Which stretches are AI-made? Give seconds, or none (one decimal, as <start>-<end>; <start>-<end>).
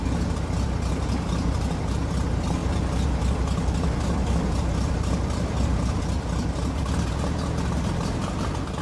none